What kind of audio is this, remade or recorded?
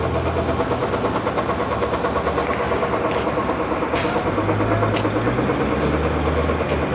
recorded